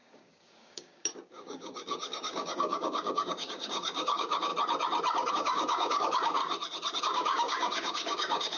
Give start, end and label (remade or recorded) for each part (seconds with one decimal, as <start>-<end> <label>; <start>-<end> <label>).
0.0-4.5 remade; 4.5-5.3 recorded; 5.3-6.4 remade; 6.4-7.0 recorded; 7.0-8.6 remade